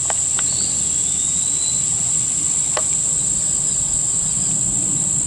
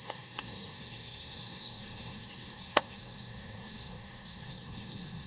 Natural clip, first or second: first